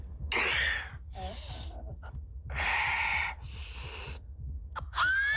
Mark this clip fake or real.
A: real